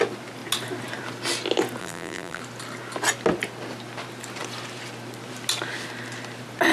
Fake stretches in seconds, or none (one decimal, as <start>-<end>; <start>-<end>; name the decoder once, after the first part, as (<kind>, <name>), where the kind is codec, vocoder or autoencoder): 1.8-2.4 (vocoder, BigVGAN v2)